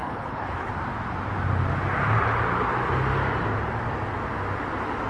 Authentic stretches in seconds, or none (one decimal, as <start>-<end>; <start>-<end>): 0.7-5.1